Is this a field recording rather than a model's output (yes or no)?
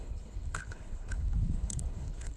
no